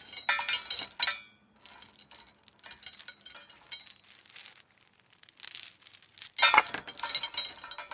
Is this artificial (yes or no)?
no